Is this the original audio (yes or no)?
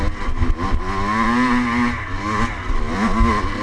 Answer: yes